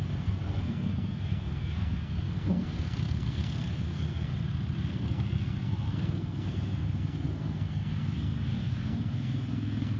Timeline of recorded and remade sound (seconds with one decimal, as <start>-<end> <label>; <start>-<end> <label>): 0.0-4.3 remade; 4.3-4.9 recorded; 4.9-10.0 remade